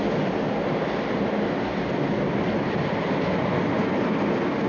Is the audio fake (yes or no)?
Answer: no